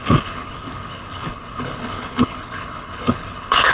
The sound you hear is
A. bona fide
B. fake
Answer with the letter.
B